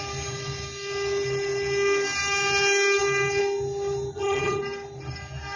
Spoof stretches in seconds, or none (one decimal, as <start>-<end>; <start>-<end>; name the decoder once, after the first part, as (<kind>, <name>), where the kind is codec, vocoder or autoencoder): 4.1-4.6 (vocoder, HiFi-GAN)